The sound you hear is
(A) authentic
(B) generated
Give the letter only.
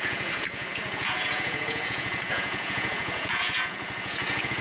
B